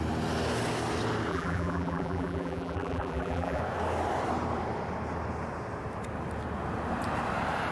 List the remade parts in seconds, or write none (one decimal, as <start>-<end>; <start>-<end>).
1.3-3.6